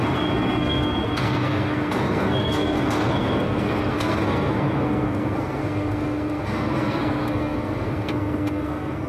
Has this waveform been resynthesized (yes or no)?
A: yes